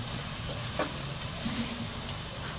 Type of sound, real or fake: real